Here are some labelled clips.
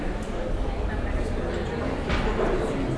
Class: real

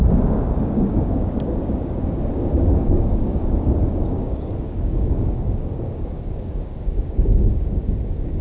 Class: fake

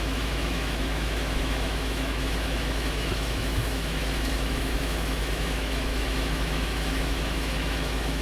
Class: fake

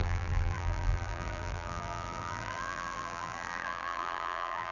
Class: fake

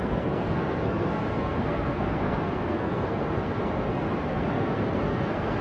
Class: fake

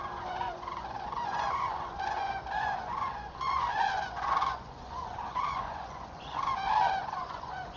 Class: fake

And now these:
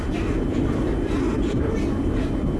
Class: real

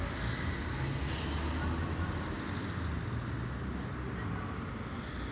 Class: real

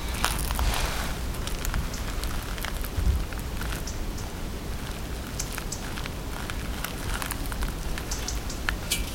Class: real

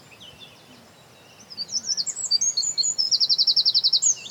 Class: real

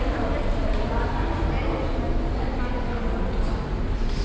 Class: real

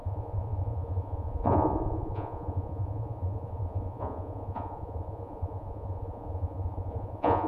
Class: fake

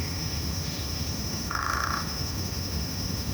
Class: fake